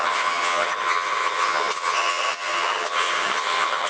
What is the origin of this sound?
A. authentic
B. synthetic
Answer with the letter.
B